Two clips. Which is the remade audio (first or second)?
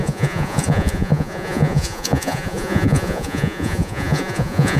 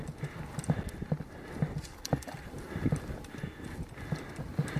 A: first